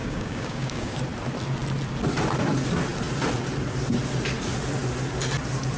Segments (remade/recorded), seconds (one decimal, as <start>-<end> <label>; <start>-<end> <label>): 0.0-1.0 remade; 1.0-5.8 recorded

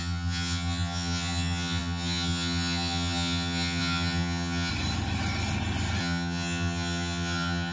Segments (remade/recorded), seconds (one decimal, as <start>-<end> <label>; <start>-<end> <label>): 0.0-4.7 remade; 4.7-6.0 recorded; 6.0-7.7 remade

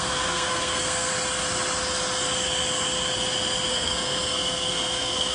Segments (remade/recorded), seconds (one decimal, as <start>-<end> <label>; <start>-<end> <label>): 0.0-1.1 remade; 1.1-3.7 recorded; 3.7-5.3 remade

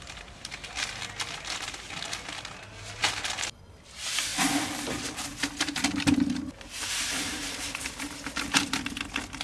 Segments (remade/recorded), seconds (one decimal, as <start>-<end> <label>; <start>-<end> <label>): 0.0-9.4 recorded

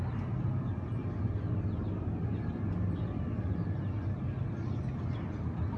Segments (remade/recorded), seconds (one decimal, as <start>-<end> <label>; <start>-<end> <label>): 0.0-5.8 recorded

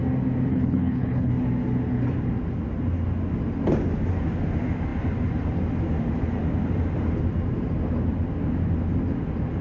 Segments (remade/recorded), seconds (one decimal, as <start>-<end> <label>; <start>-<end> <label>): 0.0-0.5 recorded; 0.5-1.3 remade; 1.3-9.6 recorded